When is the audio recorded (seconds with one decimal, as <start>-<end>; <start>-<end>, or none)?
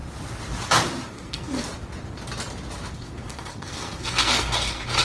0.0-1.1; 1.6-2.9